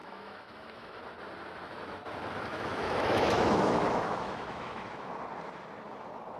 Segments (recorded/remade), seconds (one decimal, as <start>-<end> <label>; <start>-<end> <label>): 0.0-1.0 remade; 1.0-2.5 recorded; 2.5-5.1 remade; 5.1-6.4 recorded

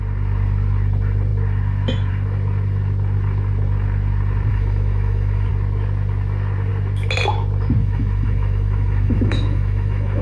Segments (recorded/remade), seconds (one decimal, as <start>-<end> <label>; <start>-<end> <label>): 0.0-4.5 recorded; 4.5-5.5 remade; 5.5-7.8 recorded; 7.8-10.2 remade

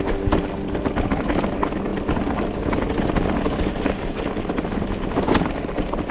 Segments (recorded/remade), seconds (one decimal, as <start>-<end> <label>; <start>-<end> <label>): 0.0-6.1 recorded

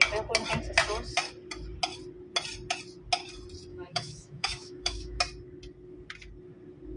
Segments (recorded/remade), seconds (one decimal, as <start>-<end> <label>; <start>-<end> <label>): 0.0-3.7 recorded; 3.7-5.2 remade; 5.2-7.0 recorded

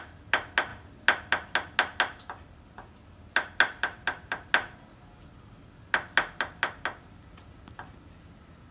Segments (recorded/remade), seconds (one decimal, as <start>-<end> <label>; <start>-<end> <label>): 0.0-8.7 recorded

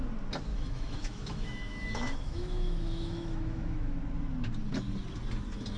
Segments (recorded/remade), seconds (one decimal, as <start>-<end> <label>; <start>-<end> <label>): 0.0-0.5 recorded; 0.5-4.0 remade; 4.0-5.8 recorded

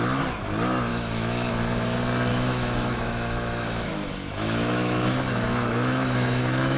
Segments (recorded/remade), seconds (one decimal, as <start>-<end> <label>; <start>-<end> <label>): 0.0-0.9 recorded; 0.9-1.5 remade; 1.5-2.3 recorded; 2.3-6.8 remade

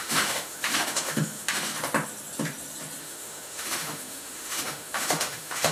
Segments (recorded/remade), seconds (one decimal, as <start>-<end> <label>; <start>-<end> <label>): 0.0-1.7 remade; 1.7-3.0 recorded; 3.0-5.7 remade